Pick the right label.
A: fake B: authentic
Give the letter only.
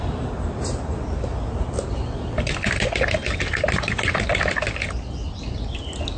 B